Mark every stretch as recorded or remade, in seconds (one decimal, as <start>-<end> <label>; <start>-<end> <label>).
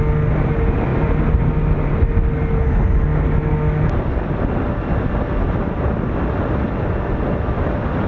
0.0-8.1 recorded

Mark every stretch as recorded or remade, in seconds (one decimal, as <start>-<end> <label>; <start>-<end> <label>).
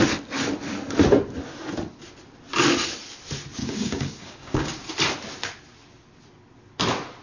0.0-3.6 recorded; 3.6-4.9 remade; 4.9-7.2 recorded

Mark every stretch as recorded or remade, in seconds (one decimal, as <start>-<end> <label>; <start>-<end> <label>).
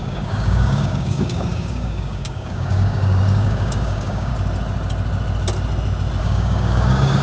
0.0-4.3 remade; 4.3-6.2 recorded; 6.2-7.2 remade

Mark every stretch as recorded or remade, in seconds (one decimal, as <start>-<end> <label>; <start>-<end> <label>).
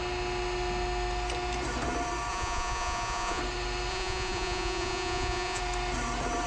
0.0-2.3 recorded; 2.3-3.4 remade; 3.4-3.9 recorded; 3.9-5.6 remade; 5.6-6.5 recorded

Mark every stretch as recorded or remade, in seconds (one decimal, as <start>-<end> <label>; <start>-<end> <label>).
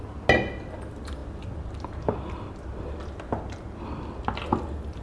0.0-5.0 recorded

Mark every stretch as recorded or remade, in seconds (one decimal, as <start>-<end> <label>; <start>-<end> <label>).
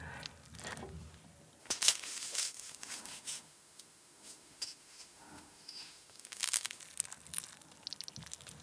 0.0-1.6 recorded; 1.6-6.8 remade; 6.8-8.6 recorded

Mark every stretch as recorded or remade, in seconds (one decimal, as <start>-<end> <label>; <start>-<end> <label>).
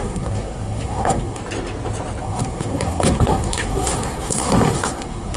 0.0-1.4 remade; 1.4-2.2 recorded; 2.2-5.4 remade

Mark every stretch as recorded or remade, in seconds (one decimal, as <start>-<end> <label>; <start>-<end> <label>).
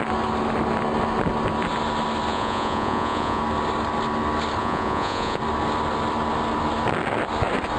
0.0-2.3 recorded; 2.3-3.4 remade; 3.4-4.6 recorded; 4.6-5.4 remade; 5.4-7.8 recorded